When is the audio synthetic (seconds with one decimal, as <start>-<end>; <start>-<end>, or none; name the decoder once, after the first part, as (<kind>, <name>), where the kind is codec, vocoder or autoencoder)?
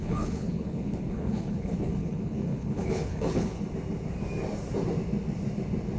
0.0-3.6 (codec, HILCodec)